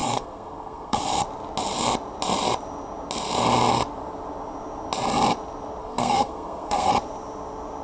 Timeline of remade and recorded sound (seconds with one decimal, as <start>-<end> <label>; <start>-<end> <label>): 0.0-1.0 remade; 1.0-5.8 recorded; 5.8-6.9 remade; 6.9-7.8 recorded